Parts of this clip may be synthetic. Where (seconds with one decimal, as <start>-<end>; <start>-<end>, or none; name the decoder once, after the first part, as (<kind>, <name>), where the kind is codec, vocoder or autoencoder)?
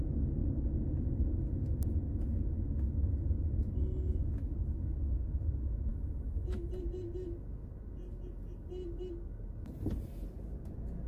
5.9-6.7 (autoencoder, DAC-VAE)